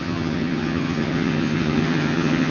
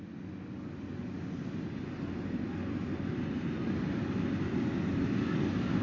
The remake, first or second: first